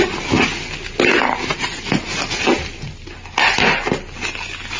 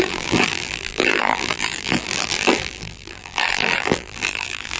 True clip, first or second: first